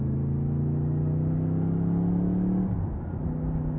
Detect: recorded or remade recorded